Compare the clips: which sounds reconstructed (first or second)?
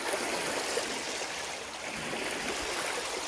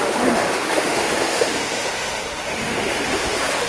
second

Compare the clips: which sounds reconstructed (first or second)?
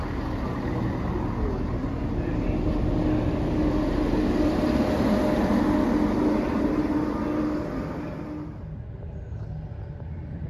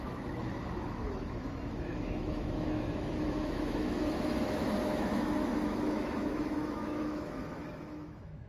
second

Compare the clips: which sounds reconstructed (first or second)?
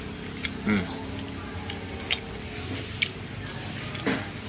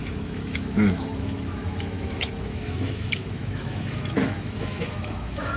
second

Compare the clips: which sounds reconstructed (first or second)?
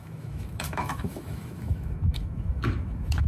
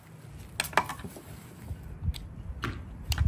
first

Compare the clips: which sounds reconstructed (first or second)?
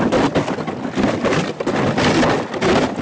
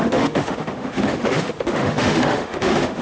second